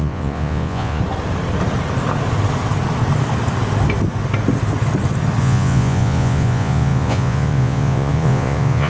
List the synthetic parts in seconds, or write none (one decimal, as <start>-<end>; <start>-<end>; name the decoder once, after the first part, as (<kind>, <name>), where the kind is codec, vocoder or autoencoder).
0.0-1.0 (vocoder, Vocos); 5.4-8.9